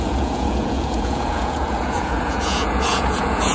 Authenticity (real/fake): fake